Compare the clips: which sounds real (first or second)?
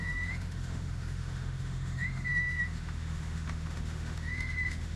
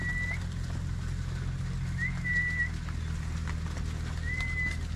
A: second